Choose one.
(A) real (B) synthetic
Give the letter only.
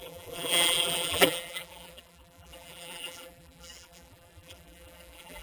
B